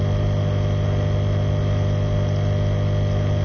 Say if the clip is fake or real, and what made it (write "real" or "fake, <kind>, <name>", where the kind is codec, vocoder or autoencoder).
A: real